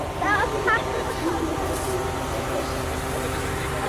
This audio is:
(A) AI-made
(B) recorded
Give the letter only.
A